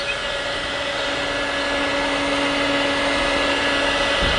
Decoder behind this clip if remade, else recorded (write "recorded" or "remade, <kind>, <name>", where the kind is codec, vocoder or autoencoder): recorded